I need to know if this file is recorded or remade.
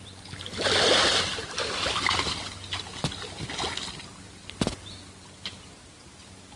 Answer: recorded